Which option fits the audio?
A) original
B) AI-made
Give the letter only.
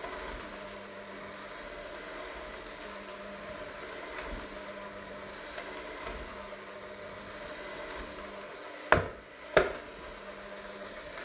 A